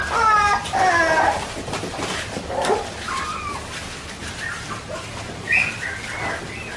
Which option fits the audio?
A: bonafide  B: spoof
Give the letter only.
A